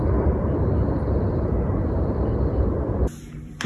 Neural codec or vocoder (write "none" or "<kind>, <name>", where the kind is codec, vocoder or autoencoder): none